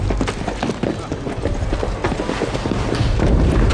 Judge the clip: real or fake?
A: real